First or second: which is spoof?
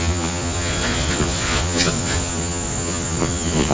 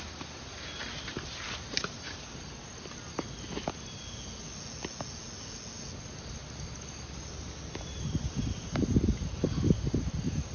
first